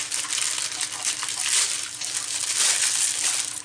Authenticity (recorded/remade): recorded